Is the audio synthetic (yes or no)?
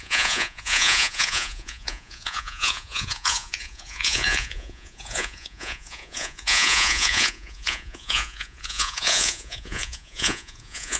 yes